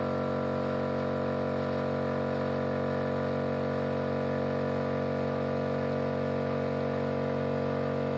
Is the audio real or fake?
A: real